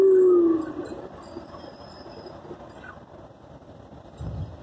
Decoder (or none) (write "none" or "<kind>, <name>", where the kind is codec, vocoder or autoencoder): none